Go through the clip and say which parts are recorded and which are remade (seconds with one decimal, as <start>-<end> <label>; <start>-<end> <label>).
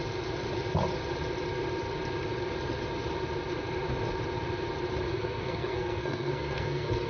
0.0-5.1 recorded; 5.1-7.1 remade